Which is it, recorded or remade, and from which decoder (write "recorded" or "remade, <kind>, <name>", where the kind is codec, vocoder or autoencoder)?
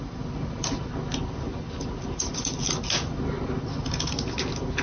recorded